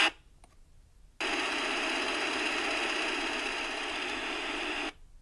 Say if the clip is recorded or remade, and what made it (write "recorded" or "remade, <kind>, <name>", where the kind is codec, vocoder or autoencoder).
recorded